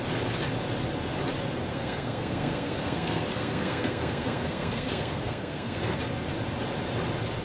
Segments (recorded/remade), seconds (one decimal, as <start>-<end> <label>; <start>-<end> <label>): 0.0-1.7 recorded; 1.7-6.0 remade; 6.0-7.4 recorded